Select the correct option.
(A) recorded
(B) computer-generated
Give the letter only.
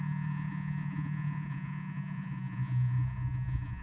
B